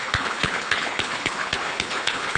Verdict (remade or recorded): remade